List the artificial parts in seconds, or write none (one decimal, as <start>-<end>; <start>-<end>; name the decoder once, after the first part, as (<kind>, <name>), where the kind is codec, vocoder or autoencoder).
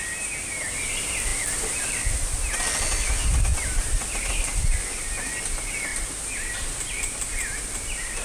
3.5-4.6 (vocoder, BigVGAN v2)